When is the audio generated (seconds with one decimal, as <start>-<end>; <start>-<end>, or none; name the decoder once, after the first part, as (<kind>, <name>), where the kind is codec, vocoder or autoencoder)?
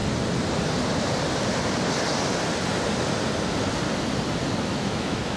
4.7-5.4 (autoencoder, DAC-VAE)